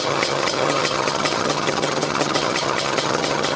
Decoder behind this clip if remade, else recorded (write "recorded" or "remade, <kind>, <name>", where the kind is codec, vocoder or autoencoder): remade, vocoder, HiFi-GAN